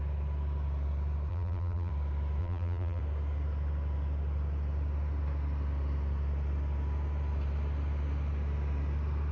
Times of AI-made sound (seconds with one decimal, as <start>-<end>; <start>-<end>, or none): 1.3-1.9; 2.4-3.0

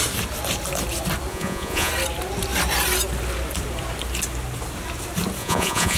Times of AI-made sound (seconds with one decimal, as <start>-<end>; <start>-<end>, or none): 1.3-1.9; 5.4-6.0

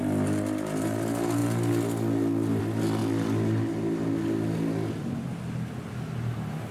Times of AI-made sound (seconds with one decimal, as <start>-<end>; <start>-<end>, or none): none

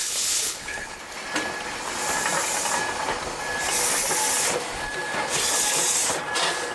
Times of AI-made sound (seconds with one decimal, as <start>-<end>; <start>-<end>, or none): 0.0-1.0

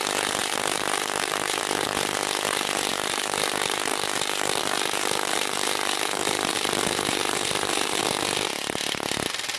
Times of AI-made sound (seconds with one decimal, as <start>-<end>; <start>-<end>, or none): 0.4-1.6; 2.9-8.0